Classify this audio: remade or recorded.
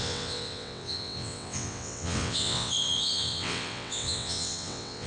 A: remade